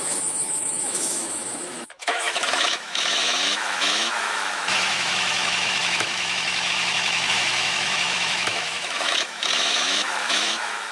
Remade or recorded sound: remade